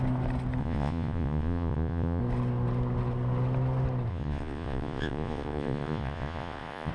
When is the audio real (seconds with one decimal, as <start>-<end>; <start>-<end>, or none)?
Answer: 0.0-0.6; 2.2-4.1